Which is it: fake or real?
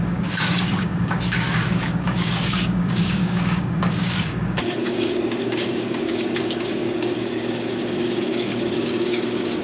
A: fake